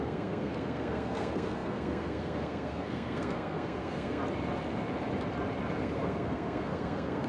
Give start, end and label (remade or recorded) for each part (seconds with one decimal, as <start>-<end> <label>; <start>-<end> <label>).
0.0-4.2 remade; 4.2-5.8 recorded; 5.8-7.3 remade